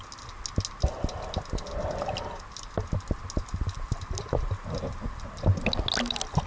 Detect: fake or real real